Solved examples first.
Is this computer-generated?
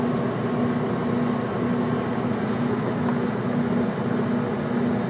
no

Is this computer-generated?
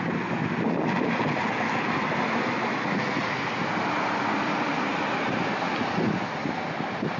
no